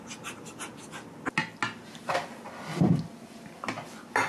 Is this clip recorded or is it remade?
recorded